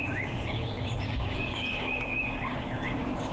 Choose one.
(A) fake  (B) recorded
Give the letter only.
A